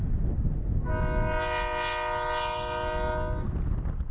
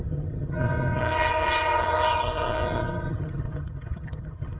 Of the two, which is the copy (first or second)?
second